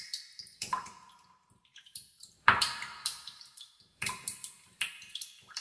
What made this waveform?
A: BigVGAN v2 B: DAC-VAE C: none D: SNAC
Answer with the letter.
A